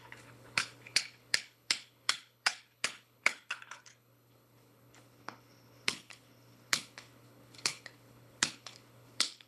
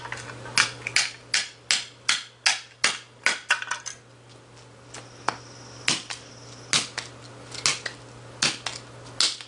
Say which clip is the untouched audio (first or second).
second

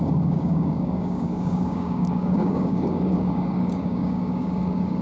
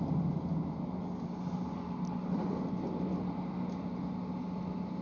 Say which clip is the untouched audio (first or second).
second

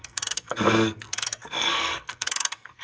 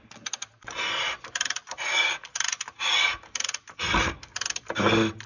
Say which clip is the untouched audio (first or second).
second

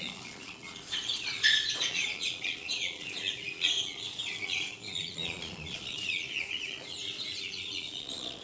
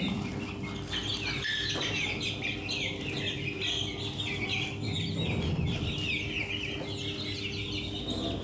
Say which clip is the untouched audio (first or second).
second